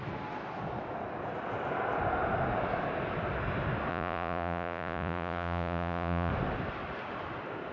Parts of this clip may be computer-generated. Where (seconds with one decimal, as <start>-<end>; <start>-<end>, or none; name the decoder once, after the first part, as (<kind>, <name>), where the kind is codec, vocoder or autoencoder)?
3.9-6.3 (vocoder, Vocos)